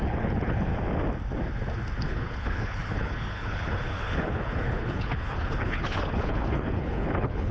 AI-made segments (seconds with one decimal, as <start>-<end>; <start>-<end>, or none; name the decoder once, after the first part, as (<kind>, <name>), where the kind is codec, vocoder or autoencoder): 0.0-0.7 (codec, HILCodec); 2.0-7.5